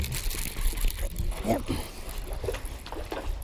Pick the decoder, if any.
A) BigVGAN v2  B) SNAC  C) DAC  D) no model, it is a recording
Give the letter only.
D